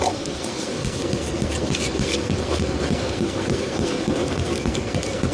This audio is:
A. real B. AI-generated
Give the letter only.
B